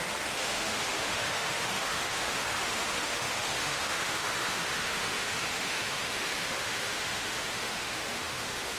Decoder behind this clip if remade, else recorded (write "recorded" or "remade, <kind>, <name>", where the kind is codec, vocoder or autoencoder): remade, autoencoder, DAC-VAE